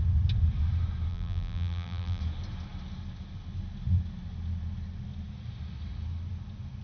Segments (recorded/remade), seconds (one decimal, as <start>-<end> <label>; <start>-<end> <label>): 0.0-1.1 recorded; 1.1-2.2 remade; 2.2-6.8 recorded